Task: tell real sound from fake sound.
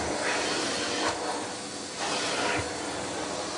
real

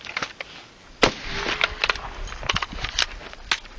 real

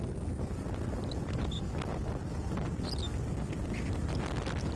real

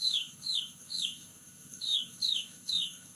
fake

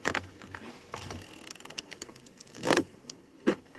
fake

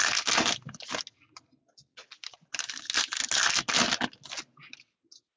real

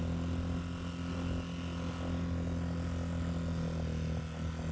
real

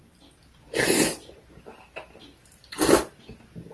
real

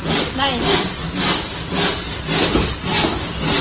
real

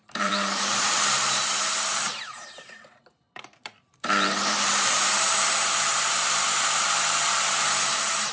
fake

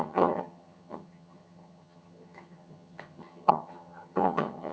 fake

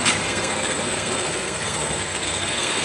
fake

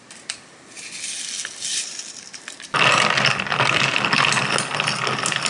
real